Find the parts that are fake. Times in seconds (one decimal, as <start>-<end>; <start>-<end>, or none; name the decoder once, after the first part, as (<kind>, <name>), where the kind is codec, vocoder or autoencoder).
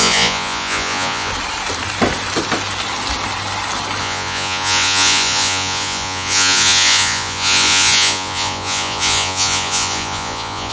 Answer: 0.0-1.3 (vocoder, Vocos); 4.0-10.7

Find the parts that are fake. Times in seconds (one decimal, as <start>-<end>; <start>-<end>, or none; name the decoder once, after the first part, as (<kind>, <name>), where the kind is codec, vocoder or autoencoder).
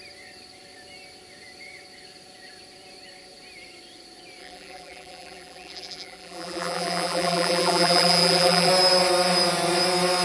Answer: 4.4-8.7 (vocoder, BigVGAN v2)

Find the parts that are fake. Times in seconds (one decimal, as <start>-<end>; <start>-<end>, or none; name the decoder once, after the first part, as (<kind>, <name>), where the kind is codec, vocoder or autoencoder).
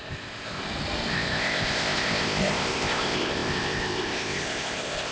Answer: 0.0-0.6 (codec, ZipCodec); 1.1-5.1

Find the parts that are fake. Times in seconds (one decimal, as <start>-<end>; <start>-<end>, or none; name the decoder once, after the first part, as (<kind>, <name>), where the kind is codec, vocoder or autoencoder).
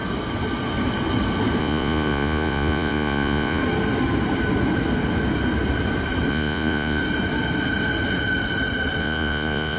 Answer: 1.6-3.6 (vocoder, Vocos); 6.3-7.0; 9.0-9.8